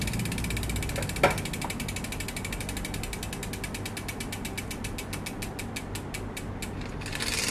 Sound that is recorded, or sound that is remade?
recorded